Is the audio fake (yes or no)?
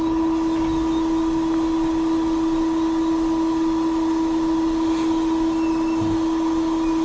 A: no